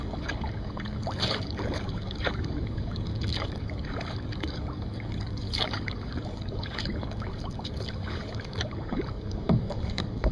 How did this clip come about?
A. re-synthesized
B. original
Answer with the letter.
A